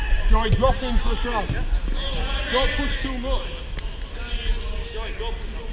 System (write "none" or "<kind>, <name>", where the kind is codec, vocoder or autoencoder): none